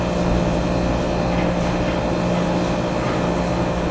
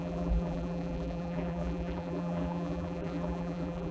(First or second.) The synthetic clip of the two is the second